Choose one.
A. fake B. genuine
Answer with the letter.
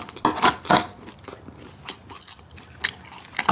B